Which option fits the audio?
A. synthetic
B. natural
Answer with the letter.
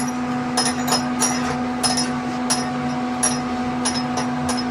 B